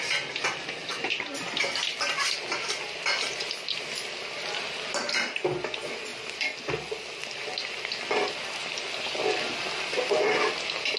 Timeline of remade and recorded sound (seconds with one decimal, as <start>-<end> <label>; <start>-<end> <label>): 0.0-11.0 recorded